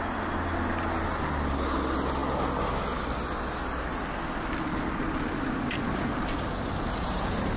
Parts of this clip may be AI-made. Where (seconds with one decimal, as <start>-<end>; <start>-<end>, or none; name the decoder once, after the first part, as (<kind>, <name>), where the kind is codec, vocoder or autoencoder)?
none